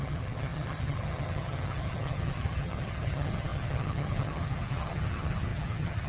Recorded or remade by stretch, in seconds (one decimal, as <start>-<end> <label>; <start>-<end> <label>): 0.0-6.1 remade

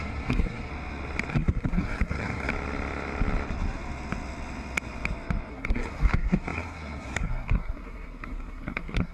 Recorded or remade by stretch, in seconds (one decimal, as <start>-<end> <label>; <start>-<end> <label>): 0.0-0.7 remade; 0.7-1.3 recorded; 1.3-2.5 remade; 2.5-5.5 recorded; 5.5-9.1 remade

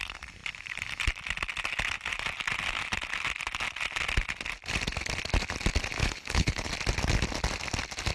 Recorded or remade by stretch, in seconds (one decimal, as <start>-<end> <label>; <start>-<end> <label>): 0.0-6.0 recorded; 6.0-6.7 remade; 6.7-8.1 recorded

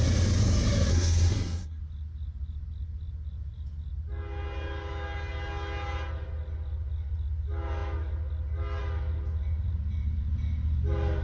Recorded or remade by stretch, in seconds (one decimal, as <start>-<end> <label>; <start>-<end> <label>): 0.0-0.9 recorded; 0.9-1.8 remade; 1.8-11.2 recorded